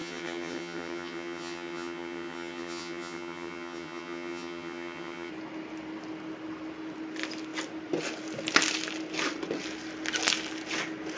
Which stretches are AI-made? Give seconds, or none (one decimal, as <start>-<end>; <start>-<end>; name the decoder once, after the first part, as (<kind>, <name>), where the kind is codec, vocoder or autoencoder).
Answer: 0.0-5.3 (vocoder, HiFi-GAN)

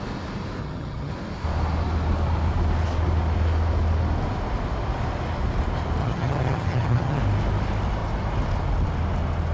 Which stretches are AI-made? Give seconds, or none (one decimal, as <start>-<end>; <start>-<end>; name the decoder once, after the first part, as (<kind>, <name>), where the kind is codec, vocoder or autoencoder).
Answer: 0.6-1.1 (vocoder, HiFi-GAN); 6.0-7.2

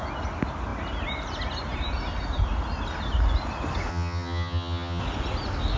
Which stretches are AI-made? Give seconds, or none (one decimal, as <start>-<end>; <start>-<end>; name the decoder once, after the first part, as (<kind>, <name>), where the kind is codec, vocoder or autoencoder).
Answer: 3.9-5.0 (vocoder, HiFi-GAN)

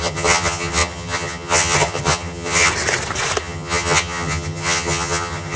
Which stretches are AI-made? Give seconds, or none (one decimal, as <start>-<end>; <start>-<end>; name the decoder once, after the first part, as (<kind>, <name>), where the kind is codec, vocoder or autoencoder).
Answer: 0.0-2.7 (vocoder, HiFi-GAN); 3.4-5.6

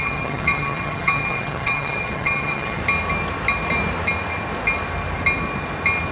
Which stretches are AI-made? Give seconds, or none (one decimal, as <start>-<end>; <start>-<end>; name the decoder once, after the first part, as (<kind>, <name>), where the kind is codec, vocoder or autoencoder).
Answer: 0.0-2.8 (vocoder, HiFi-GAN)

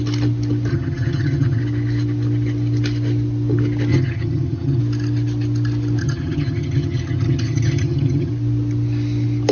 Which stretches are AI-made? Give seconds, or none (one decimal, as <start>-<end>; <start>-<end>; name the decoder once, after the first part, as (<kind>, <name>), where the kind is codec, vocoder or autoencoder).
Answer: 0.7-1.6 (vocoder, HiFi-GAN); 3.9-4.8; 6.0-8.3